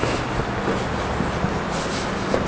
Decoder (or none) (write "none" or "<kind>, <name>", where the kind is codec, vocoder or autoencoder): none